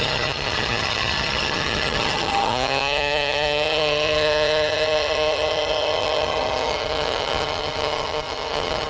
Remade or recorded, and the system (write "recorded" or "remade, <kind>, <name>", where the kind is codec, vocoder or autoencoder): remade, vocoder, HiFi-GAN